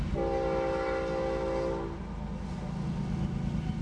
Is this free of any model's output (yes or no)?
yes